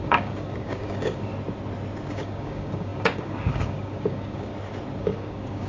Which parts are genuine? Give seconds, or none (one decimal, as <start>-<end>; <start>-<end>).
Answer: 1.3-2.1; 4.5-5.0